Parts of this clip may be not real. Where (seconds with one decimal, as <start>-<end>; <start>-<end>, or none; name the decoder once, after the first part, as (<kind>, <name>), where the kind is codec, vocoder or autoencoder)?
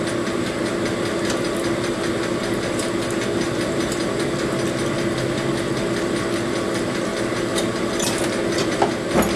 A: none